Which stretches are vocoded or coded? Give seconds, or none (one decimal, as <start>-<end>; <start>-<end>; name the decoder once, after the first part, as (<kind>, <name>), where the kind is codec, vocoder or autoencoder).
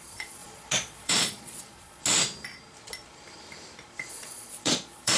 0.0-2.0 (vocoder, Vocos); 4.1-5.2